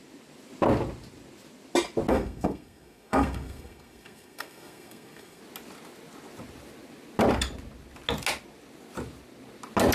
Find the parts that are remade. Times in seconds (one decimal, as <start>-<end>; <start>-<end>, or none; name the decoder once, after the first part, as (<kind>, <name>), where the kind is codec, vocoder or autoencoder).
2.1-5.4 (codec, SNAC)